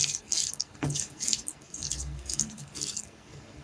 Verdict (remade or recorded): remade